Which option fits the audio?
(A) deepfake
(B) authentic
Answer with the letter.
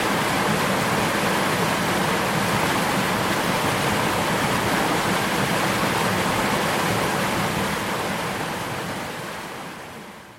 B